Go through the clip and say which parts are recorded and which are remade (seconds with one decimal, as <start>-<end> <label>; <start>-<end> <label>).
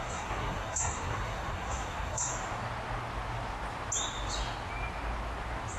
0.0-2.3 remade; 2.3-5.8 recorded